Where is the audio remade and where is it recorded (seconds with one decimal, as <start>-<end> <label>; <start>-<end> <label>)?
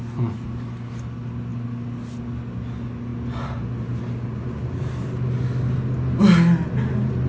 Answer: 0.0-7.3 recorded